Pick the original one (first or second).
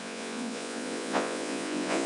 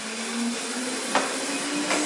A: second